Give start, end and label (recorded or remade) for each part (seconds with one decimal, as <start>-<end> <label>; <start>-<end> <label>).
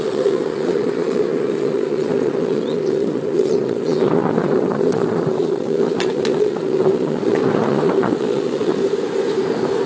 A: 0.0-8.8 remade; 8.8-9.9 recorded